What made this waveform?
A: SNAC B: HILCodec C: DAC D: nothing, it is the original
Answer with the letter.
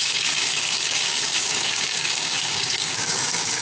C